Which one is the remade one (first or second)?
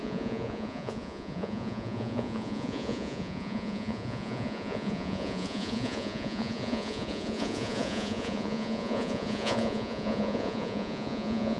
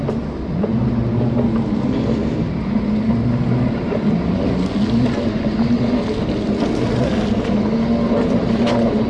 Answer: first